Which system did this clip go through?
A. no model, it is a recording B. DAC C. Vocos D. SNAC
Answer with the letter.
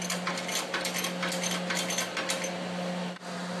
A